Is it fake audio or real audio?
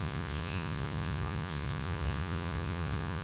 fake